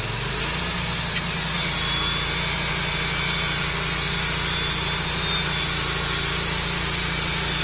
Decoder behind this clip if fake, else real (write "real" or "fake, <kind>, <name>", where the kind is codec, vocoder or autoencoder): real